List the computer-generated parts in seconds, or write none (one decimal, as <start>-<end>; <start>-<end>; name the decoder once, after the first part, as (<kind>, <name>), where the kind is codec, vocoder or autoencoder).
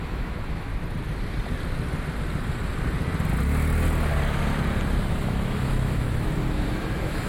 0.0-0.7 (autoencoder, DAC-VAE); 5.1-7.3